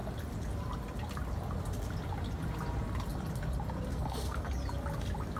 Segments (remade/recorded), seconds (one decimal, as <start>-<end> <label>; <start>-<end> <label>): 0.0-3.9 recorded; 3.9-4.5 remade; 4.5-5.4 recorded